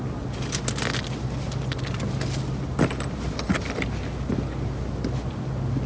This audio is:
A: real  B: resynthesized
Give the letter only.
A